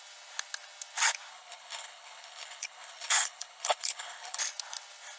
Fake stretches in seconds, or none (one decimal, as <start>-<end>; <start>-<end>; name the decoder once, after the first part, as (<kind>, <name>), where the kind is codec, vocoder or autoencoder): 1.3-4.4 (codec, HILCodec)